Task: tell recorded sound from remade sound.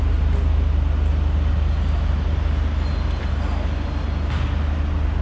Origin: recorded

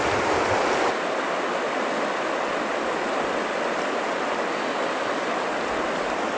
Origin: recorded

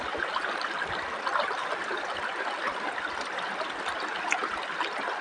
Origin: recorded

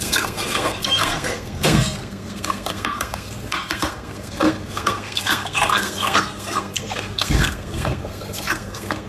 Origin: remade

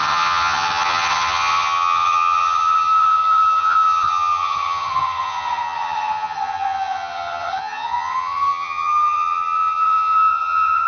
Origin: remade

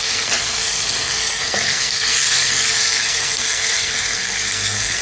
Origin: remade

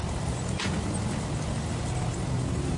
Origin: recorded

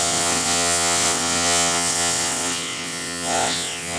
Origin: remade